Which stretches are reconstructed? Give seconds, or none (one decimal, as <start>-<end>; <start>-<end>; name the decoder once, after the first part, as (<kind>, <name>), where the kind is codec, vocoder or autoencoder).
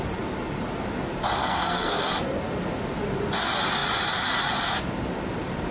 1.4-2.0 (codec, SNAC)